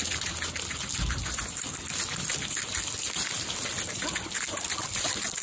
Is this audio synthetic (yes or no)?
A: no